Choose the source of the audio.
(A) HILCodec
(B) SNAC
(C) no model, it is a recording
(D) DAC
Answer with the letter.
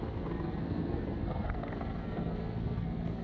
B